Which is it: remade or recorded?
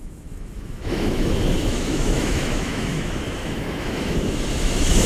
remade